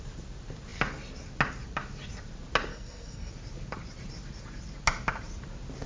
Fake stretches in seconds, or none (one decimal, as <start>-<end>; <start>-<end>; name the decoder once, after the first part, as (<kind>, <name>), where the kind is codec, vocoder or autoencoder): 2.7-3.3 (codec, SNAC)